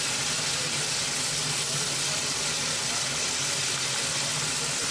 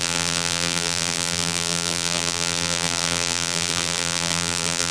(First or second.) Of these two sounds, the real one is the first